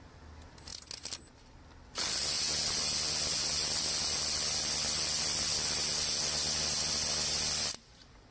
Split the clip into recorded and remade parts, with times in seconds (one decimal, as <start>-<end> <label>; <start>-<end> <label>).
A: 0.0-8.3 recorded

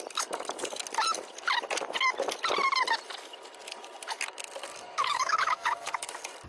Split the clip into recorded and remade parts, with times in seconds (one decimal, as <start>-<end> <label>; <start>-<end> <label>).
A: 0.0-4.7 recorded; 4.7-6.1 remade; 6.1-6.5 recorded

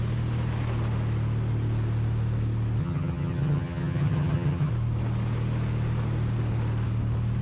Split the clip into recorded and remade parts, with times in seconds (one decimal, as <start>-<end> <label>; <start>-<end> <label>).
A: 0.0-2.8 recorded; 2.8-4.7 remade; 4.7-7.4 recorded

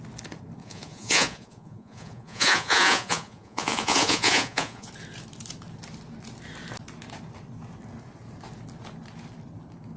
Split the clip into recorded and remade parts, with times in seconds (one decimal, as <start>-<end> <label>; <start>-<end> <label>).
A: 0.0-0.6 recorded; 0.6-4.9 remade; 4.9-10.0 recorded